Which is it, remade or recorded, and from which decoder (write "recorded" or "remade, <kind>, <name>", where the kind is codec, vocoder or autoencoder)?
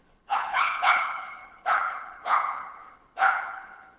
remade, codec, HILCodec